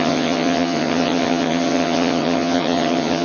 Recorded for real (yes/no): no